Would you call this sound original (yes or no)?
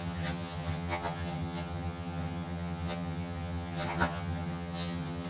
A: no